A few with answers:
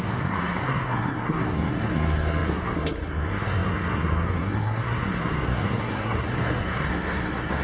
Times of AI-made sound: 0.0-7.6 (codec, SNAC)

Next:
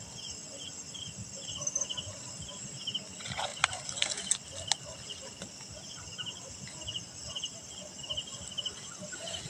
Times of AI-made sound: none

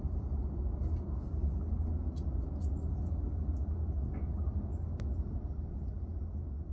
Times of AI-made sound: none